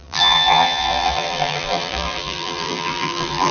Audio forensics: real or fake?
fake